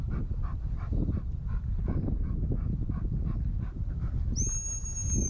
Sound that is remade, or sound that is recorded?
recorded